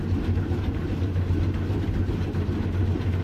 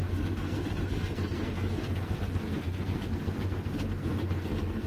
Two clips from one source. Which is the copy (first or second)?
second